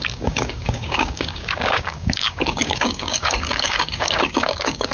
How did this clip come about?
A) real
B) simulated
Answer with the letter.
B